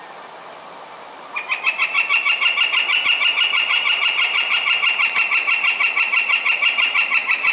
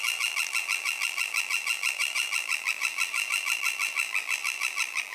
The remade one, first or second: second